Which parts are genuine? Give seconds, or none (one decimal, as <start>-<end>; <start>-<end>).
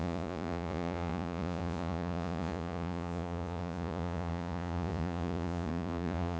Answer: none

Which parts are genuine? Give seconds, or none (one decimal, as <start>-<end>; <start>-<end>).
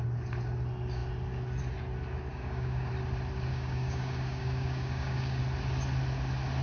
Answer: 0.0-2.3; 2.9-3.5; 5.4-6.6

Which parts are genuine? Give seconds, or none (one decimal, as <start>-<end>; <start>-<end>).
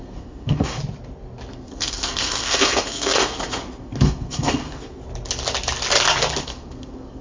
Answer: 0.8-1.5; 5.0-6.4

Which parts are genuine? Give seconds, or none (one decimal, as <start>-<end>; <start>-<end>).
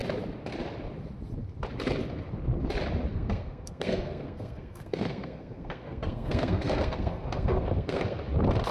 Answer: 0.0-3.1; 8.2-8.7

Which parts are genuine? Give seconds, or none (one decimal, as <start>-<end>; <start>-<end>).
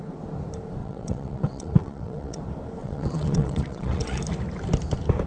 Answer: 0.0-0.8; 2.4-2.8; 4.2-5.3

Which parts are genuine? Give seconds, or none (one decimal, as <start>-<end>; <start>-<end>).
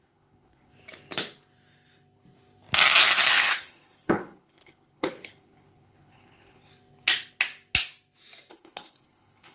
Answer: 0.7-3.3; 6.7-8.5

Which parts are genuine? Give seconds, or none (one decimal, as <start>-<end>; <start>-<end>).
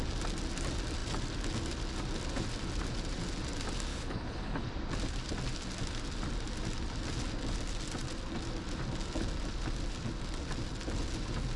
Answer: 0.0-3.9; 4.7-11.6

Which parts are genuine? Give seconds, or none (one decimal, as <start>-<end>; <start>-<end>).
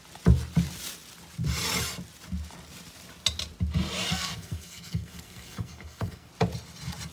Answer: 0.0-4.1; 6.3-7.1